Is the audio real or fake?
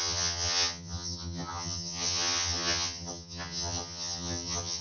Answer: fake